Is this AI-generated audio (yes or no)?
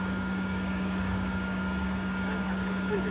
yes